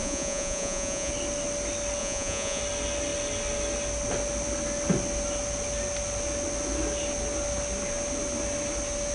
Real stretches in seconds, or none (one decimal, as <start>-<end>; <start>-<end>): 1.1-2.0; 2.6-9.1